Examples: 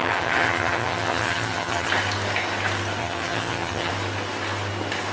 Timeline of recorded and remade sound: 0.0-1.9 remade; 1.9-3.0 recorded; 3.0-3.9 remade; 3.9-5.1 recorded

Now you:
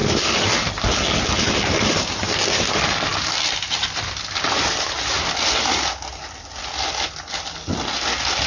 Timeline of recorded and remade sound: 0.0-8.5 recorded

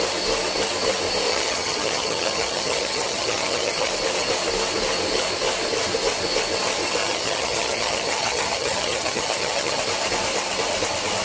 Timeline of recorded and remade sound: 0.0-1.3 recorded; 1.3-3.9 remade; 3.9-7.0 recorded; 7.0-9.8 remade; 9.8-11.2 recorded

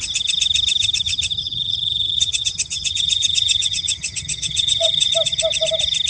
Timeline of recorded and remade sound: 0.0-1.4 recorded; 1.4-5.1 remade; 5.1-6.1 recorded

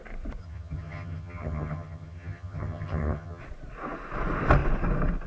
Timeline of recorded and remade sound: 0.0-0.4 recorded; 0.4-3.4 remade; 3.4-5.3 recorded

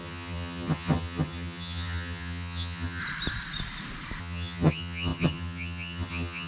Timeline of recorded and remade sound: 0.0-3.0 remade; 3.0-4.2 recorded; 4.2-6.5 remade

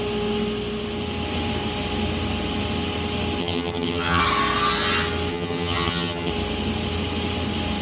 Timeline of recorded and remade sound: 0.0-3.4 recorded; 3.4-4.2 remade; 4.2-5.3 recorded; 5.3-6.3 remade; 6.3-7.8 recorded

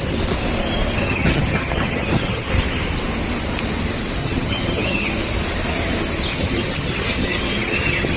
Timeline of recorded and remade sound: 0.0-1.0 recorded; 1.0-2.5 remade; 2.5-4.2 recorded; 4.2-5.1 remade; 5.1-6.3 recorded; 6.3-8.2 remade